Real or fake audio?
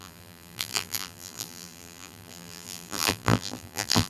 fake